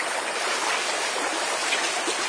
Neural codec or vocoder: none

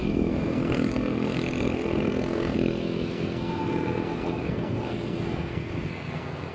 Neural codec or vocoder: codec, SNAC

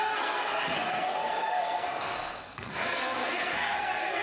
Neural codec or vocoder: codec, SNAC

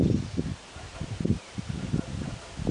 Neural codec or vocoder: none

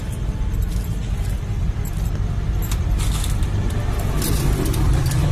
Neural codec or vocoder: none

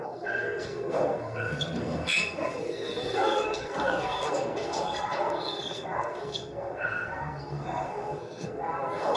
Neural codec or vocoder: codec, SNAC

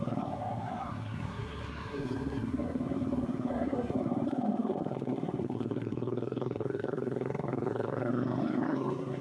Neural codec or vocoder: codec, SNAC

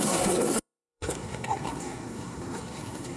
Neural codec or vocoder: codec, SNAC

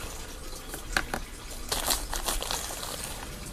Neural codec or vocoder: none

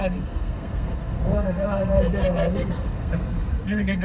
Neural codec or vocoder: codec, SNAC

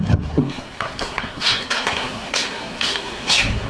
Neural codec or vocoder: codec, SNAC